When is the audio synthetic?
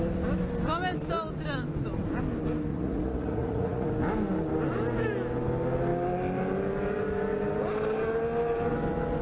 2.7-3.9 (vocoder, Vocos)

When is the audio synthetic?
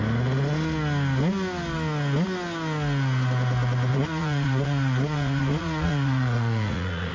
3.9-7.1 (vocoder, Vocos)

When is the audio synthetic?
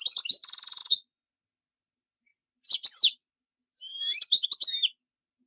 0.8-1.3 (vocoder, Vocos)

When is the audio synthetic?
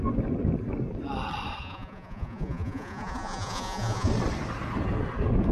1.6-4.1 (vocoder, Vocos)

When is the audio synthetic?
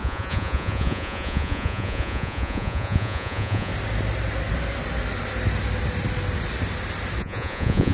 0.0-3.7 (vocoder, Vocos); 7.2-7.9